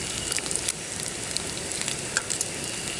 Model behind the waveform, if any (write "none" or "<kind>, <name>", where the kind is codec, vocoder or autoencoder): none